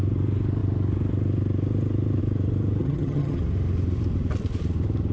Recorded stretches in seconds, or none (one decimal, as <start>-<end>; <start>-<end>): 0.0-2.8; 3.4-5.1